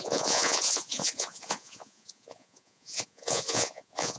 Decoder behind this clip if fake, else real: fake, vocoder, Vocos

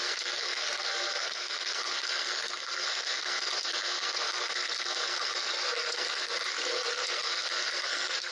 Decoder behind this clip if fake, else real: fake, codec, SNAC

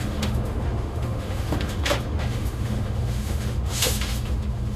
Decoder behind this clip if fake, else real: fake, autoencoder, DAC-VAE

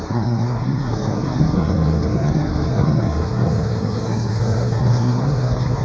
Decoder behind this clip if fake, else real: fake, codec, SNAC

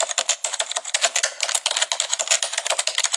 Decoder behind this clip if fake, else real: real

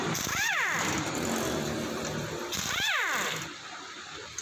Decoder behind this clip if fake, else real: fake, vocoder, BigVGAN v2